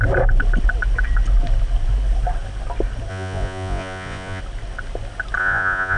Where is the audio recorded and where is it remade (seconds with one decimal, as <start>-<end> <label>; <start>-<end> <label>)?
0.0-3.1 recorded; 3.1-4.4 remade; 4.4-5.4 recorded; 5.4-6.0 remade